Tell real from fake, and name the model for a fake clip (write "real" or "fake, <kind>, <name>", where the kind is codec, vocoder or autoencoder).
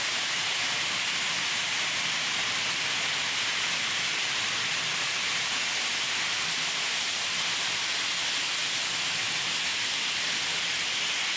real